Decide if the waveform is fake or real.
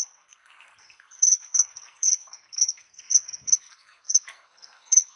fake